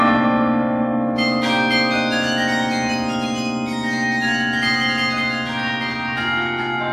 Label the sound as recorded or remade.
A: recorded